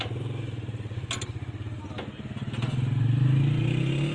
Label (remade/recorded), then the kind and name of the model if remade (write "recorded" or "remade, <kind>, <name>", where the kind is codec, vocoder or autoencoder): recorded